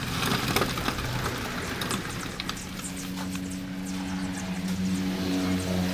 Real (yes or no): yes